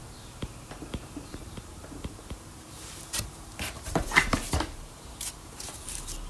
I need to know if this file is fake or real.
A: fake